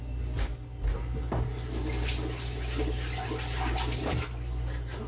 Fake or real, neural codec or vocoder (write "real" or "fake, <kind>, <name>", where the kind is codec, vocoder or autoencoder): real